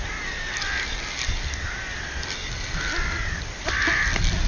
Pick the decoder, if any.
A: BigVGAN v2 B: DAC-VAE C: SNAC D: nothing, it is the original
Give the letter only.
D